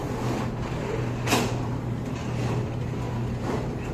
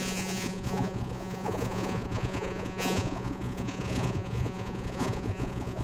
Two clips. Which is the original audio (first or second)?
first